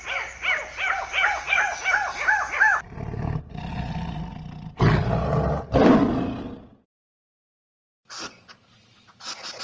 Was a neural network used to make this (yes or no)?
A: no